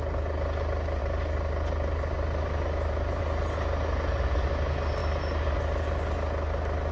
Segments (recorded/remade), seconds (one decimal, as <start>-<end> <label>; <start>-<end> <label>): 0.0-1.0 recorded; 1.0-3.2 remade; 3.2-6.9 recorded